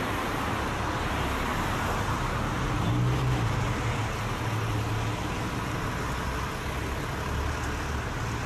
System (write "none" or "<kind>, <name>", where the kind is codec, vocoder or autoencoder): none